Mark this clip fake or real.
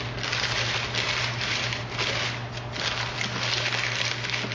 real